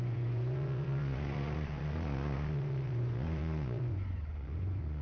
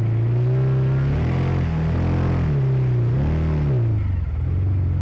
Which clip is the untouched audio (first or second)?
second